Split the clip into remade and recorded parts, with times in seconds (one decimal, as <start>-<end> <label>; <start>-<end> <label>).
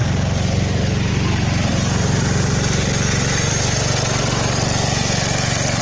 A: 0.0-5.8 recorded